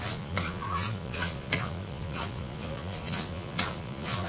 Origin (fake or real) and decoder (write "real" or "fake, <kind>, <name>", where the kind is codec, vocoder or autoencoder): fake, vocoder, Vocos